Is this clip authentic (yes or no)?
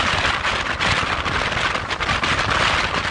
yes